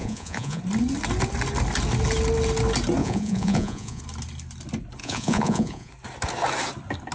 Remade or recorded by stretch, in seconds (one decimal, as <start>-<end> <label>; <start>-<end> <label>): 0.0-0.6 remade; 0.6-3.0 recorded; 3.0-4.0 remade; 4.0-5.0 recorded; 5.0-5.9 remade; 5.9-7.1 recorded